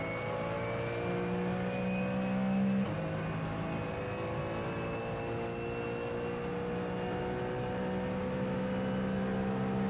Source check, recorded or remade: recorded